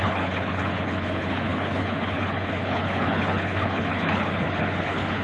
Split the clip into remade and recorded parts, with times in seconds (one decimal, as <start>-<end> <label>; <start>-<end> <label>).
0.0-5.2 remade